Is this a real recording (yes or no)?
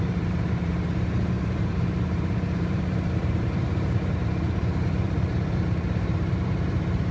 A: no